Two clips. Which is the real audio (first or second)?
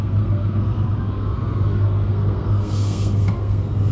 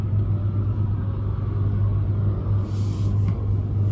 second